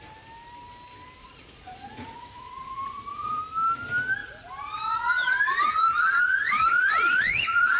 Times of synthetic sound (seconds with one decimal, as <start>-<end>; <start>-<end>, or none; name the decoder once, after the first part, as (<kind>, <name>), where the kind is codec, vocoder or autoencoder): 1.2-3.4 (vocoder, Vocos); 4.2-7.8